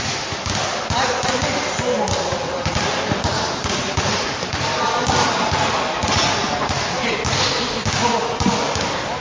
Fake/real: real